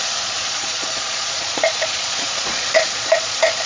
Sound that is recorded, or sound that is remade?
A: remade